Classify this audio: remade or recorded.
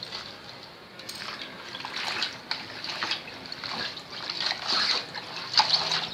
recorded